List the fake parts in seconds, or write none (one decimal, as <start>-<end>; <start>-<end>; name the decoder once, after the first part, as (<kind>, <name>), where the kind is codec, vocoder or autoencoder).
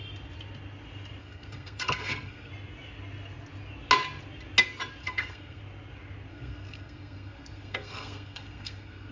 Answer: 1.2-2.5 (codec, SNAC); 5.0-5.6; 6.3-9.1